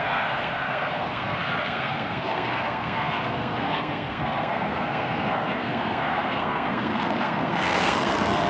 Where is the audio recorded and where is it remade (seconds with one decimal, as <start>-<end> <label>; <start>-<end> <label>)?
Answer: 0.0-8.5 remade

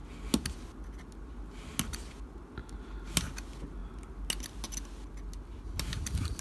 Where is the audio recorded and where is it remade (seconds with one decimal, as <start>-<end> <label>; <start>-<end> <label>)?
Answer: 0.0-6.4 recorded